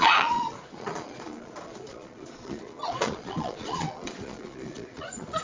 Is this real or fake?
fake